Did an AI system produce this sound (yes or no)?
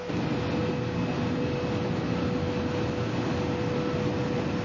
no